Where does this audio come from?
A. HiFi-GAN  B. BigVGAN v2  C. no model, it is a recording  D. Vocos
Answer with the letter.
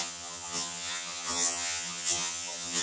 A